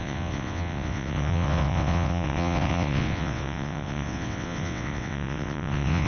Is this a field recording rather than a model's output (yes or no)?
no